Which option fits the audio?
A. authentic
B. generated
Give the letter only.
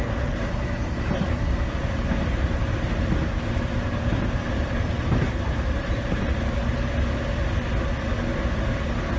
A